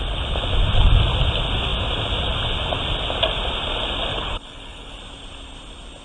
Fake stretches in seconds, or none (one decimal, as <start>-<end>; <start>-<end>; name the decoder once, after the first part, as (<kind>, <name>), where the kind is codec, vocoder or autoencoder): 4.1-4.9 (codec, HILCodec)